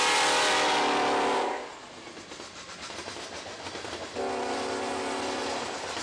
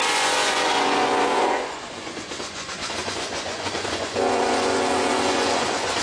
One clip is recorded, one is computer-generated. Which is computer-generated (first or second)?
second